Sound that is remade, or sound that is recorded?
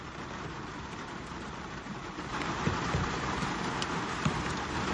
remade